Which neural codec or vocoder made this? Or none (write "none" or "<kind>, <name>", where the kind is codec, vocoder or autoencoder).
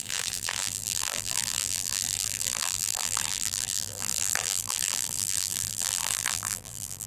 vocoder, BigVGAN v2